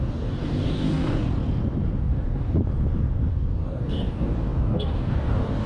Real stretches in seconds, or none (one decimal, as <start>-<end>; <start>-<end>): 1.3-2.0; 2.6-3.3